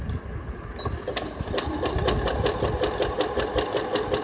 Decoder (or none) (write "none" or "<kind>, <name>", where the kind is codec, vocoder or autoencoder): none